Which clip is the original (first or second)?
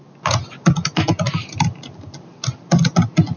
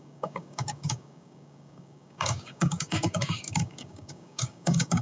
first